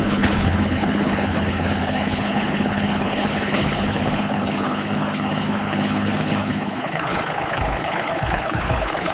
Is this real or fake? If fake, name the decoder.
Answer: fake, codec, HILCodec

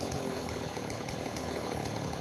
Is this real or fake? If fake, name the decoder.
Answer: fake, codec, HILCodec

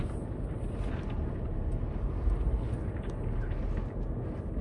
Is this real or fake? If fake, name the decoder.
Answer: real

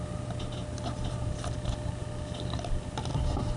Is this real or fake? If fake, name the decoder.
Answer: real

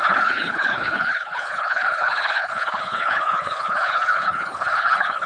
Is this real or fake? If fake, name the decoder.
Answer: fake, codec, HILCodec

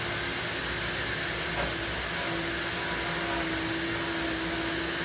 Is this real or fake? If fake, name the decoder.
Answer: real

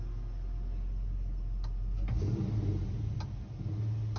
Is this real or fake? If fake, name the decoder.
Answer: real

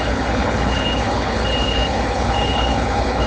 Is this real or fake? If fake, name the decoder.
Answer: fake, codec, HILCodec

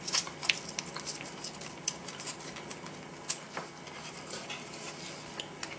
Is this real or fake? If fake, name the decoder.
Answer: real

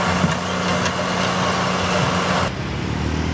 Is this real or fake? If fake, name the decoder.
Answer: real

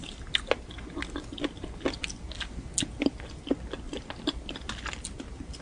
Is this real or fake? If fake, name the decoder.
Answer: real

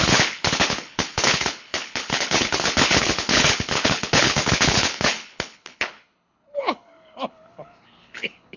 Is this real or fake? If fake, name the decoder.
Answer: fake, codec, HILCodec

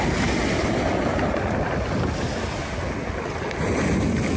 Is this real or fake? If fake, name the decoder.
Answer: real